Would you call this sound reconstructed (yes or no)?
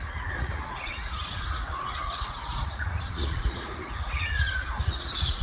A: yes